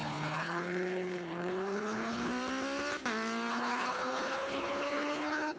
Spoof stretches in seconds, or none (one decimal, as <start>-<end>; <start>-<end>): 0.0-2.3; 3.5-5.6

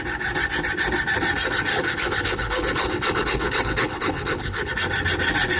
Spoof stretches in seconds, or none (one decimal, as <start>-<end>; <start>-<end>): 1.7-4.7

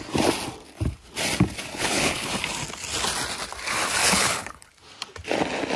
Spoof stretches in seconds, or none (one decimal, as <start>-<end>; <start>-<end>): 1.7-2.3; 4.0-4.7

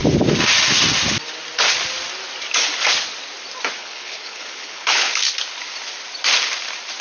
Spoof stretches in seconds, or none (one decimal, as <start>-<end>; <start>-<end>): 3.8-5.1

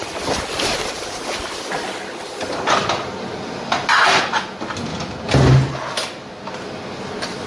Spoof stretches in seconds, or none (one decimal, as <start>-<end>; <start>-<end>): none